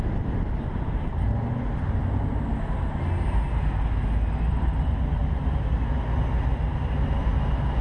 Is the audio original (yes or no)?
yes